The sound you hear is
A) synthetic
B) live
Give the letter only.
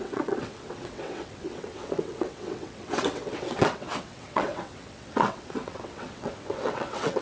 A